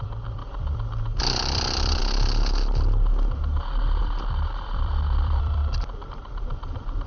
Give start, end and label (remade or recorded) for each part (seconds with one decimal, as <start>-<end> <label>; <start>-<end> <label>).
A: 0.0-0.4 remade; 0.4-1.2 recorded; 1.2-2.0 remade; 2.0-4.0 recorded; 4.0-5.6 remade; 5.6-6.1 recorded; 6.1-7.1 remade